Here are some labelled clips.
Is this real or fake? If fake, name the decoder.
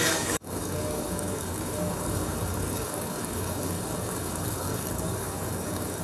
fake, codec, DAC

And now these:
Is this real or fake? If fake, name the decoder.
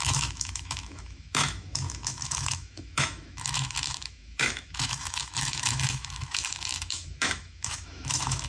fake, autoencoder, DAC-VAE